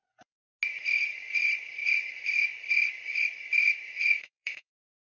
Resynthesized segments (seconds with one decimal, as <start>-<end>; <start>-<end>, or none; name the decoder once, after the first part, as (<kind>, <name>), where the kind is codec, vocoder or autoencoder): 4.2-5.1 (autoencoder, DAC-VAE)